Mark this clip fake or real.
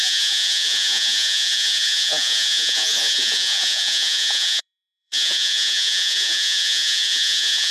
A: fake